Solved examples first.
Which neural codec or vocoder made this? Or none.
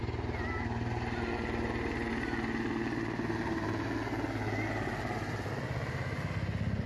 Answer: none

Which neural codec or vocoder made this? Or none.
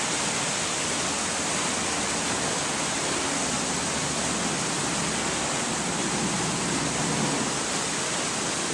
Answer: none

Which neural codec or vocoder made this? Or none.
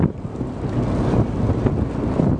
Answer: vocoder, BigVGAN v2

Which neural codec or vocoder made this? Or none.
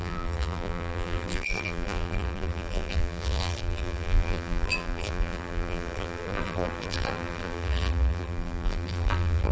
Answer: vocoder, BigVGAN v2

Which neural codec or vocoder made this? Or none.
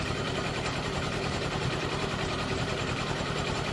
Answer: vocoder, BigVGAN v2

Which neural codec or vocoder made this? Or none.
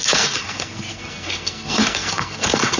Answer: codec, SNAC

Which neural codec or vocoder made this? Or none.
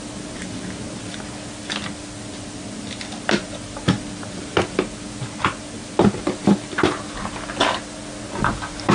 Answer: none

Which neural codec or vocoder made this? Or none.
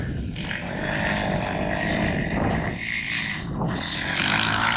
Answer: none